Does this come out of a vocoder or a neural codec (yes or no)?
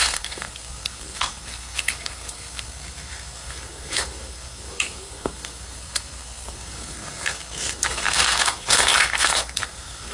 yes